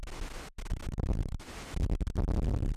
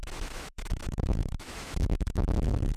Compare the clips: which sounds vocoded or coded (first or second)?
second